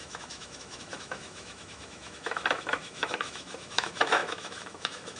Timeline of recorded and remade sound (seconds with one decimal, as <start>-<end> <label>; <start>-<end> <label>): 0.0-5.2 remade

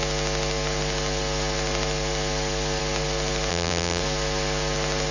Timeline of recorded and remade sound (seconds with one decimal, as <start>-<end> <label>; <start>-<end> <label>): 0.0-3.5 recorded; 3.5-4.0 remade; 4.0-5.1 recorded

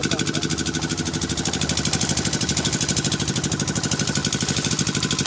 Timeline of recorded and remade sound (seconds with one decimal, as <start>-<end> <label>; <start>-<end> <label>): 0.0-5.3 recorded

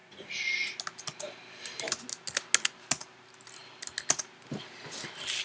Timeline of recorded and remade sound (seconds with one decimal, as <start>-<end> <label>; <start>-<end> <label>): 0.0-5.4 recorded